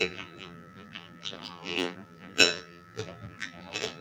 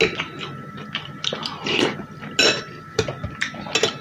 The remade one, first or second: first